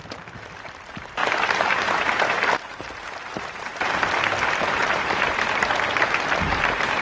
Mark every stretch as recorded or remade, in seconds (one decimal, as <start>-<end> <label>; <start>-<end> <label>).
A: 0.0-0.7 remade; 0.7-1.2 recorded; 1.2-3.9 remade; 3.9-4.8 recorded; 4.8-5.7 remade; 5.7-7.0 recorded